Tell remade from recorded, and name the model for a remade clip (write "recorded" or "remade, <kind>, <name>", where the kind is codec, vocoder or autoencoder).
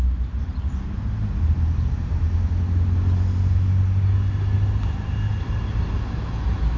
recorded